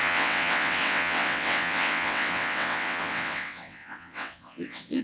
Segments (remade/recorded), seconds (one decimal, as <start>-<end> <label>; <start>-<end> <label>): 0.0-5.0 remade